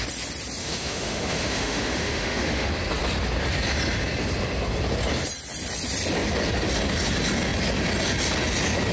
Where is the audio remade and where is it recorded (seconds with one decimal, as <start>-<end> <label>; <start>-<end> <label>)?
0.0-0.6 recorded; 0.6-2.7 remade; 2.7-8.9 recorded